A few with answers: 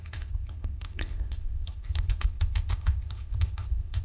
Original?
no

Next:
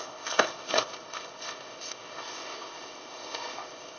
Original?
no